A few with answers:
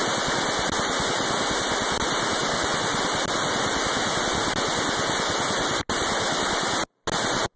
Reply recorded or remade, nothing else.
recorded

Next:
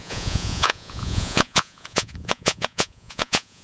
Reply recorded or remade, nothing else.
remade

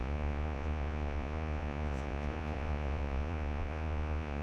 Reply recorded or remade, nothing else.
remade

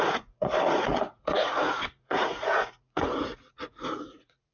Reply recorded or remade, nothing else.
remade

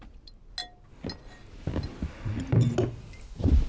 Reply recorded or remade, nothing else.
recorded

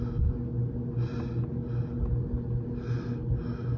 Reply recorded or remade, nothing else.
recorded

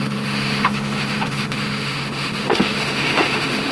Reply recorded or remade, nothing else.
remade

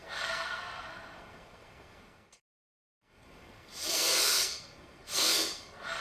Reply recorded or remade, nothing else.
remade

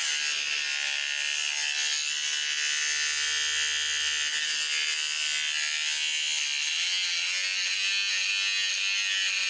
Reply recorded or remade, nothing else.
recorded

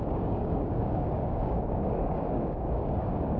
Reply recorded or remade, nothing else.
remade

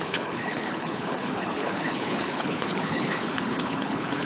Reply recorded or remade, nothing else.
remade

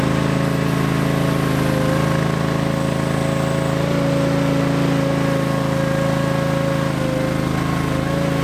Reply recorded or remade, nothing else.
recorded